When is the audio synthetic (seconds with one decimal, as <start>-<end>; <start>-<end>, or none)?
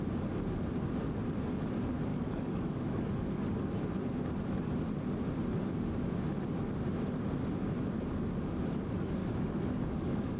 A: 2.1-3.7; 9.2-10.4